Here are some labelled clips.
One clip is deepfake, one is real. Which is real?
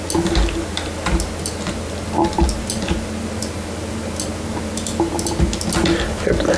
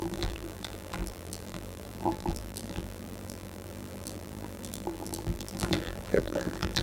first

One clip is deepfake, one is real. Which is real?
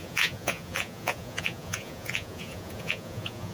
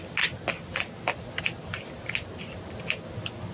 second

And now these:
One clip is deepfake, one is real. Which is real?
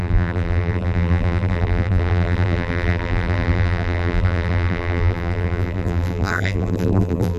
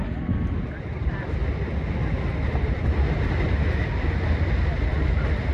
second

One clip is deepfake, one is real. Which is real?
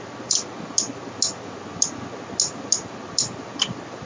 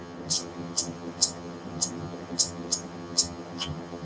first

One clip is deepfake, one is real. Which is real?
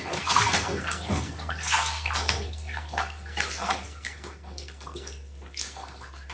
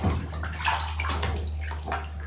second